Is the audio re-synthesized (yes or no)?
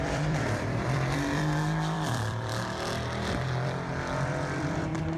yes